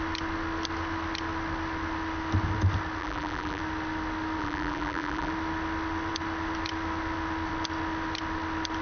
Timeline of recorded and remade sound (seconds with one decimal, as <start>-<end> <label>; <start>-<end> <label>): 0.0-3.0 recorded; 3.0-3.6 remade; 3.6-4.4 recorded; 4.4-5.3 remade; 5.3-8.8 recorded